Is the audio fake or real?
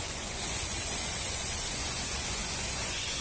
fake